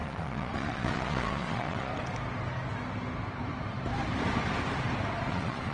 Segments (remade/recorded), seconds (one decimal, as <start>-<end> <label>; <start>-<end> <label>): 0.0-1.9 remade; 1.9-5.3 recorded; 5.3-5.7 remade